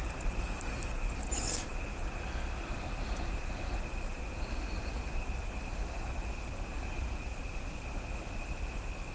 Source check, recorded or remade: recorded